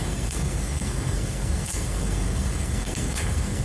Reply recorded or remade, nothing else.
remade